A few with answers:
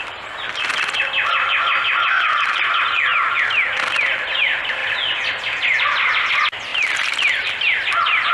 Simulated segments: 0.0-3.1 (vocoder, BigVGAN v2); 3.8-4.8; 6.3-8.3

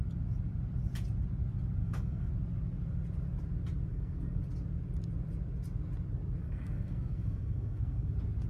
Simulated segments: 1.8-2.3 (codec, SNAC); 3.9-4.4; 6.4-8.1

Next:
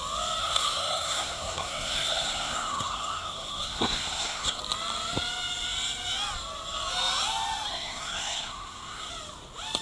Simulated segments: 0.4-4.6 (codec, SNAC); 7.7-9.1

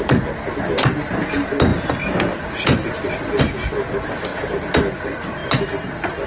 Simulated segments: none

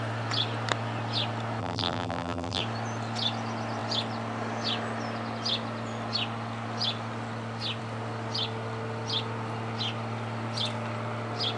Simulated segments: 1.6-2.6 (vocoder, BigVGAN v2)